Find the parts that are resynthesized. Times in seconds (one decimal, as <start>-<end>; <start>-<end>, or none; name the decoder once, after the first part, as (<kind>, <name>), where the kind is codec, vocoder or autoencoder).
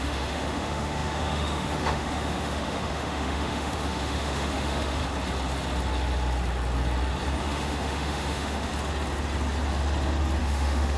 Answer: 0.0-5.0 (autoencoder, DAC-VAE); 7.4-8.7; 10.4-11.0